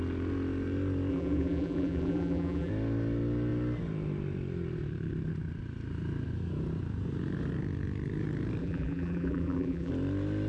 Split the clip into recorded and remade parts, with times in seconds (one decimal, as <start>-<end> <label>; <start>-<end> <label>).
0.0-1.1 recorded; 1.1-2.7 remade; 2.7-8.6 recorded; 8.6-9.9 remade; 9.9-10.5 recorded